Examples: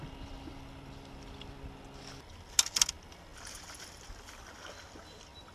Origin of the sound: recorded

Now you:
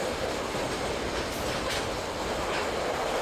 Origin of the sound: recorded